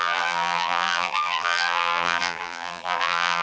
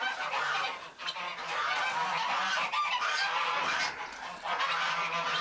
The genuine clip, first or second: second